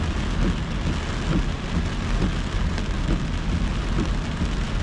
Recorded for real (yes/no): yes